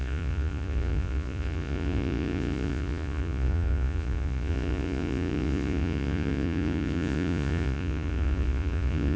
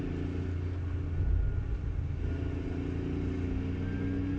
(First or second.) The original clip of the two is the second